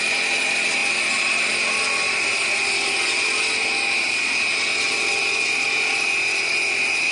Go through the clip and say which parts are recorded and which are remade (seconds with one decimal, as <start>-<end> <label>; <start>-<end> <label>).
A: 0.0-0.8 recorded; 0.8-1.5 remade; 1.5-7.1 recorded

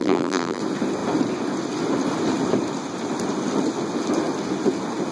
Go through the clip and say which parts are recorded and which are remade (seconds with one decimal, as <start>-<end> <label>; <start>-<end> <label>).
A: 0.0-0.6 remade; 0.6-5.1 recorded